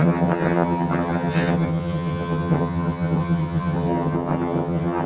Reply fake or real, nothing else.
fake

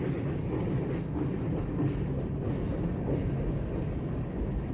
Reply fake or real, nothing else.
real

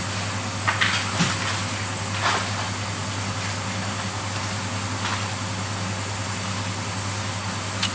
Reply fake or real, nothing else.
real